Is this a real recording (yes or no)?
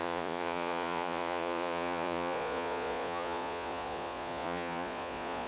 no